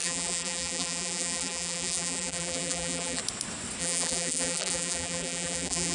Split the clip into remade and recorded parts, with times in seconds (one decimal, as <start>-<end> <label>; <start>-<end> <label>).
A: 0.0-3.2 remade; 3.2-3.8 recorded; 3.8-5.9 remade